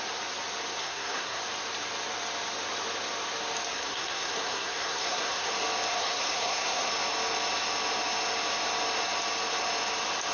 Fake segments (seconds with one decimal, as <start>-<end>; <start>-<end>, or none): 0.8-1.4; 3.7-5.5; 5.9-6.9